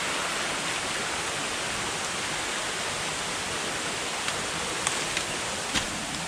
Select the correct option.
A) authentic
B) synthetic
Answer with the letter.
A